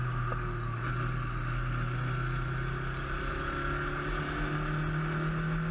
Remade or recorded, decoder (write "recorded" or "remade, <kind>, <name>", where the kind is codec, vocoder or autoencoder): recorded